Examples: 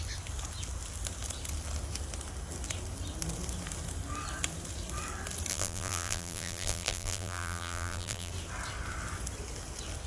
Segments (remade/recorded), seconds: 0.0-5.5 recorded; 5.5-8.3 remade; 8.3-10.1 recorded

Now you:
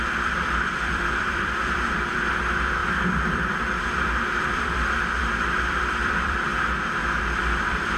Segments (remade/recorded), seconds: 0.0-6.5 remade; 6.5-7.2 recorded; 7.2-8.0 remade

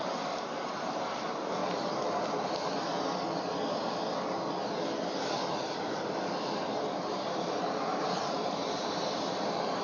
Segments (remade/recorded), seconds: 0.0-1.6 remade; 1.6-5.6 recorded; 5.6-9.8 remade

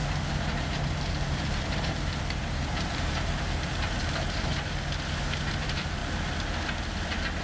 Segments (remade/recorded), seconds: 0.0-4.5 remade; 4.5-5.5 recorded; 5.5-6.0 remade; 6.0-7.4 recorded

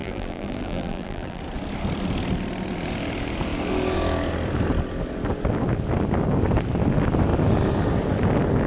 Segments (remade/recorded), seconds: 0.0-1.4 remade; 1.4-8.7 recorded

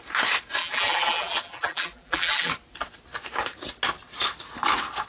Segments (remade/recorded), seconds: 0.0-0.6 recorded; 0.6-2.5 remade; 2.5-5.1 recorded

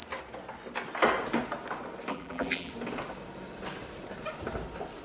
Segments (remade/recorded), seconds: 0.0-2.1 recorded; 2.1-2.7 remade; 2.7-5.0 recorded